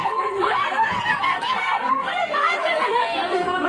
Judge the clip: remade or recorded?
remade